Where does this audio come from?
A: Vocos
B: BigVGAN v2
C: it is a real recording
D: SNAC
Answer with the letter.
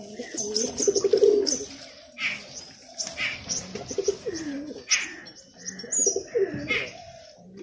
C